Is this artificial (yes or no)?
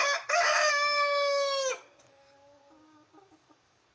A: yes